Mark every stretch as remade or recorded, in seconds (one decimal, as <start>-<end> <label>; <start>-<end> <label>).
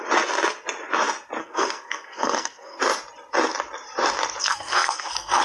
0.0-1.4 recorded; 1.4-2.8 remade; 2.8-4.4 recorded; 4.4-5.4 remade